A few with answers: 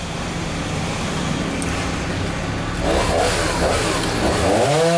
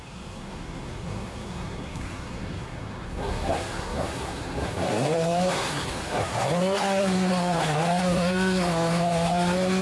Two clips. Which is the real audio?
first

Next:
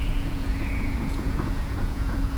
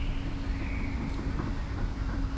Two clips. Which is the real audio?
second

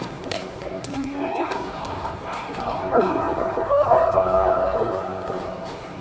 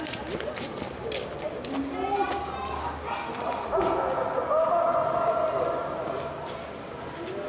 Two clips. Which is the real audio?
second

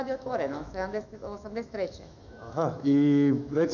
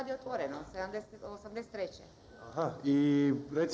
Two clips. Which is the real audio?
second